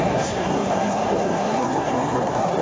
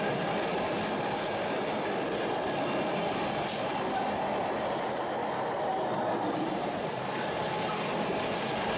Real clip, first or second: second